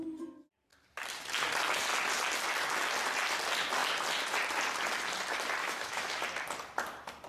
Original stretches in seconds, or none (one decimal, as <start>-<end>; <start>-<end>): 0.0-5.6; 6.2-7.3